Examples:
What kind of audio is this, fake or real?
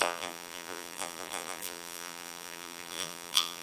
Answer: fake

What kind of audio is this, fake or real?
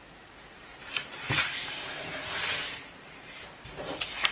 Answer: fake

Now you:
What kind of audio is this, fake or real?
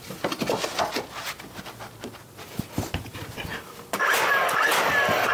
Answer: real